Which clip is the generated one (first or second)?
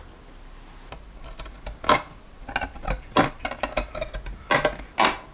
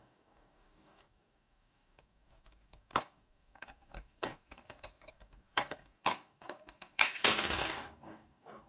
second